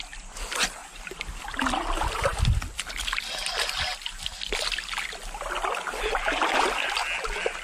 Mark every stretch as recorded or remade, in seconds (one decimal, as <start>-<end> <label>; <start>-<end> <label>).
0.0-7.6 recorded